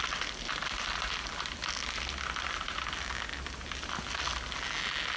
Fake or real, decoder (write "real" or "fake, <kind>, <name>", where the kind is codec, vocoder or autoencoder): real